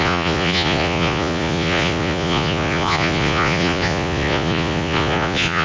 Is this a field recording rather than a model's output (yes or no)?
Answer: no